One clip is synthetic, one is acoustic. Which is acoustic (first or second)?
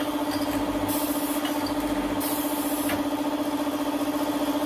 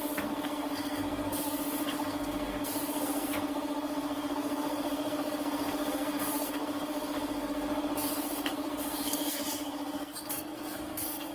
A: first